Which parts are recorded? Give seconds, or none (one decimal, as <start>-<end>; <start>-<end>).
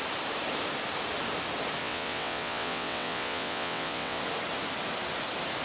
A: 0.0-1.8; 4.2-5.6